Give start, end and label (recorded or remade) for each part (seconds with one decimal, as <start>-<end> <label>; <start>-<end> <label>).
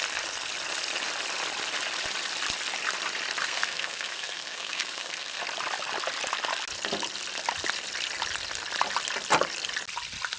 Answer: 0.0-3.4 recorded; 3.4-5.4 remade; 5.4-10.4 recorded